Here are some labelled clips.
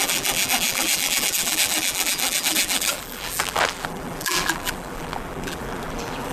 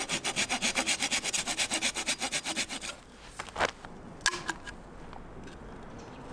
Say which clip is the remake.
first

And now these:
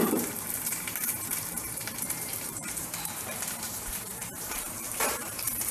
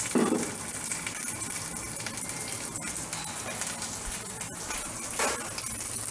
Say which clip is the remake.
first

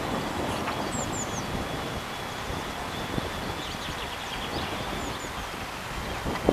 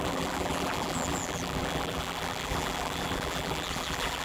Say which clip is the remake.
second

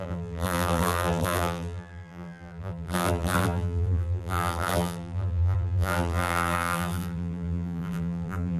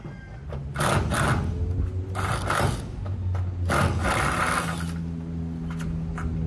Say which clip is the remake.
first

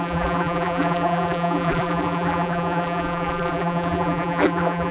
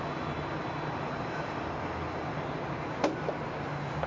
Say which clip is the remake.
first